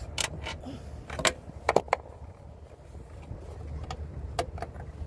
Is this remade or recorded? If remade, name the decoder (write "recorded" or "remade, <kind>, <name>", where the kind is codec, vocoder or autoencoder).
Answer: recorded